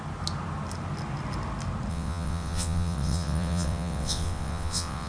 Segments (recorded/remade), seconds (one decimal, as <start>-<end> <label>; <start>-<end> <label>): 0.0-1.9 recorded; 1.9-5.1 remade